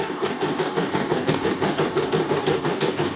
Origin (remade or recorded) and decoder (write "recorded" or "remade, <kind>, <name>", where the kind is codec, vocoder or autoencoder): remade, codec, DAC